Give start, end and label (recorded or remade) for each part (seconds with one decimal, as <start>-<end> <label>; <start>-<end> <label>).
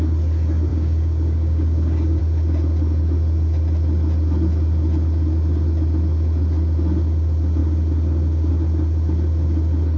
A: 0.0-0.7 recorded; 0.7-2.2 remade; 2.2-10.0 recorded